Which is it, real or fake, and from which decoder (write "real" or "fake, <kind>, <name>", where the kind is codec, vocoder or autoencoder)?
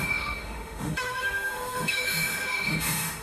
fake, autoencoder, DAC-VAE